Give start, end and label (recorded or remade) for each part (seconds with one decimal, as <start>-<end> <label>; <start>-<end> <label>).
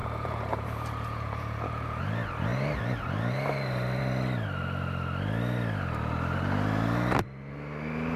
0.0-2.0 remade; 2.0-8.2 recorded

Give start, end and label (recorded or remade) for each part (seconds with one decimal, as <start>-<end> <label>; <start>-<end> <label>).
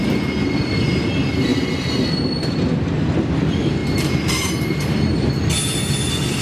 0.0-3.8 recorded; 3.8-5.4 remade; 5.4-6.4 recorded